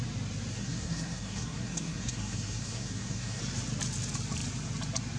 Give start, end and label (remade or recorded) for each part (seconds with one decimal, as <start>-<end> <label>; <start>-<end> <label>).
0.0-0.5 recorded; 0.5-3.4 remade; 3.4-5.2 recorded